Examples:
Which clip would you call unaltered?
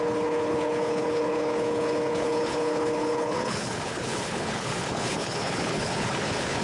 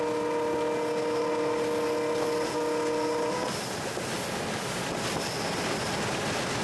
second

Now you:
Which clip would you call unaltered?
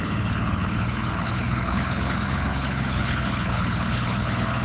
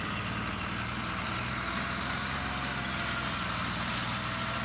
second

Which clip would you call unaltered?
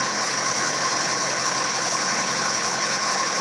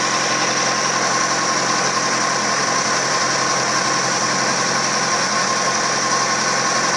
second